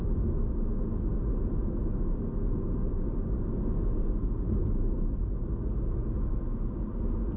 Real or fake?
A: real